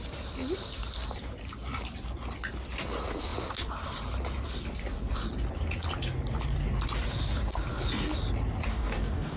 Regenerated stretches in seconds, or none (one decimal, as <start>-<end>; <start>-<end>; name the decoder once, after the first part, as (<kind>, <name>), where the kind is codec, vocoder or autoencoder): 8.7-9.4 (codec, DAC)